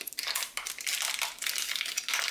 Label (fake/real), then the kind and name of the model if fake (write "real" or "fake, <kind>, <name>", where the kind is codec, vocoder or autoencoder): real